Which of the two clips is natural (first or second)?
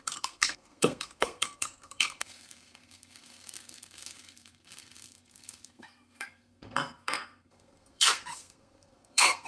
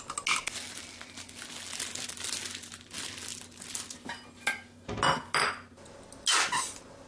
second